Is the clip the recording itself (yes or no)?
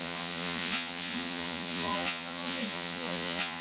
no